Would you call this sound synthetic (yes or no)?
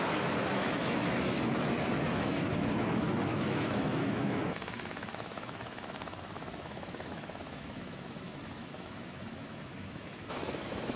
yes